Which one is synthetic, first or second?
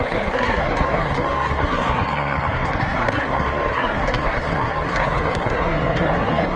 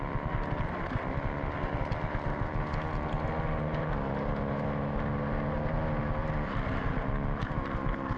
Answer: first